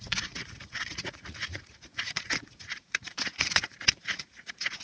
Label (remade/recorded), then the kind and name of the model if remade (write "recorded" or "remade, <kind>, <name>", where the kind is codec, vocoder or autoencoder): remade, vocoder, Vocos